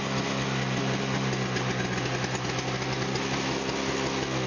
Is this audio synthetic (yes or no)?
no